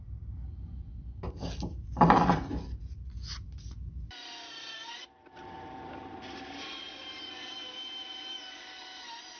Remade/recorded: recorded